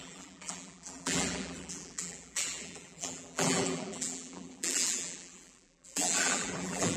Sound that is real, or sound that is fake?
fake